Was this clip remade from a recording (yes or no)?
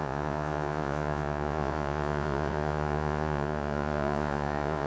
yes